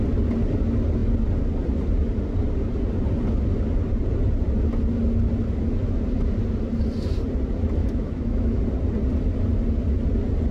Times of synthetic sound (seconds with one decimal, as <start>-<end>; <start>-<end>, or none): 7.8-8.6